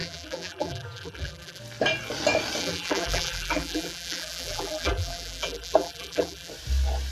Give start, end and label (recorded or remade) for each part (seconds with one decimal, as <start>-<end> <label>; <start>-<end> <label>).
0.0-1.6 remade; 1.6-2.6 recorded; 2.6-6.5 remade; 6.5-7.1 recorded